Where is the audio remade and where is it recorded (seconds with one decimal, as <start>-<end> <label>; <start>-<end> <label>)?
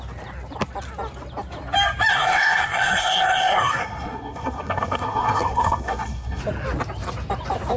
0.0-2.1 recorded; 2.1-6.4 remade; 6.4-7.8 recorded